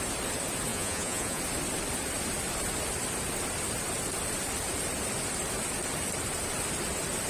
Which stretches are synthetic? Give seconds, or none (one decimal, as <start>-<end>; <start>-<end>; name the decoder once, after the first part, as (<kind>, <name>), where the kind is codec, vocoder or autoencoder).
0.7-1.4 (vocoder, Vocos)